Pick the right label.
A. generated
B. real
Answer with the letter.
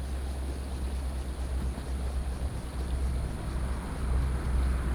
B